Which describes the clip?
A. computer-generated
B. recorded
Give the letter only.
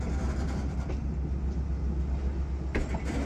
B